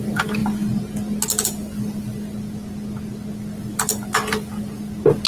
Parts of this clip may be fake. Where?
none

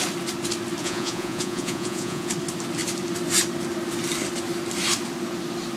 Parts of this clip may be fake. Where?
0.8-2.3 (vocoder, Vocos)

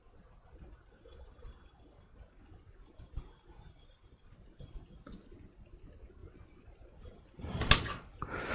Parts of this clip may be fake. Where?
none